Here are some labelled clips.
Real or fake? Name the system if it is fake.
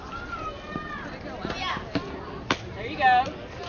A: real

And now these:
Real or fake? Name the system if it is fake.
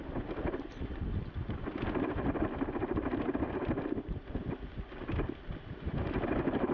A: real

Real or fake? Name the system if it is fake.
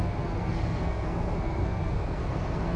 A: fake, codec, SNAC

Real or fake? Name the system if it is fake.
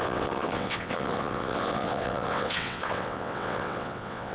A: fake, vocoder, WaveNeXt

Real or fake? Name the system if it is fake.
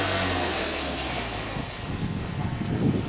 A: fake, codec, SNAC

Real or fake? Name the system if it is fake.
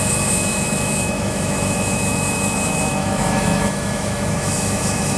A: fake, autoencoder, DAC-VAE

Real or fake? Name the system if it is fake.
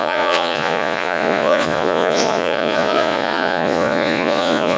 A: fake, vocoder, Vocos